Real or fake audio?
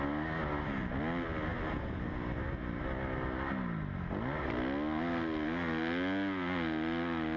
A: real